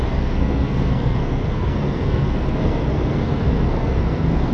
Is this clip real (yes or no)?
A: no